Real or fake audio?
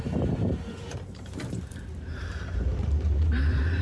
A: fake